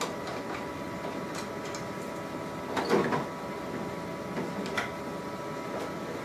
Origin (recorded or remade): recorded